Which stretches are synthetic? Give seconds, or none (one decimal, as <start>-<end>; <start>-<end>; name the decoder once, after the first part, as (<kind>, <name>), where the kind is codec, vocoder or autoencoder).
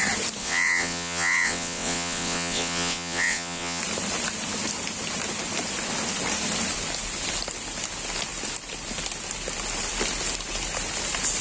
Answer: 0.4-3.8 (vocoder, WaveNeXt)